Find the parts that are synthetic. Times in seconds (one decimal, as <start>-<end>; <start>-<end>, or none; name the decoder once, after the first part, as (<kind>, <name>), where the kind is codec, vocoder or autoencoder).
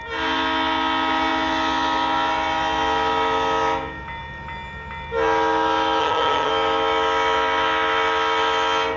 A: 6.0-6.5 (vocoder, HiFi-GAN)